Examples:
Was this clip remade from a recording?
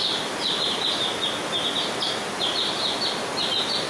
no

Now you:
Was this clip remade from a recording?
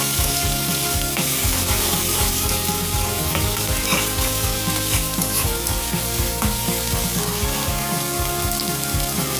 yes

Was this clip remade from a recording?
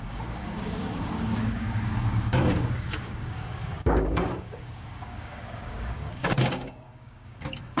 yes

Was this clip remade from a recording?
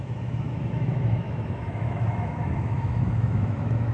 yes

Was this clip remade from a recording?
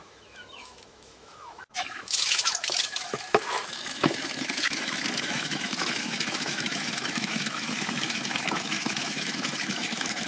yes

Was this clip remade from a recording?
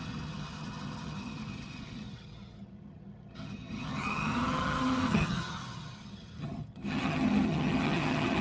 yes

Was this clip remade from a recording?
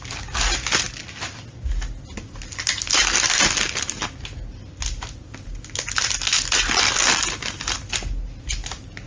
no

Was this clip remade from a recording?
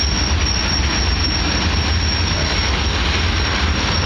no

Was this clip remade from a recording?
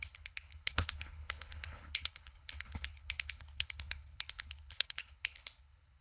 yes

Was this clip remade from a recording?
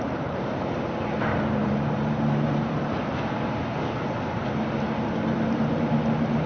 yes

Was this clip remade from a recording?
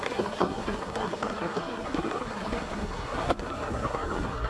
yes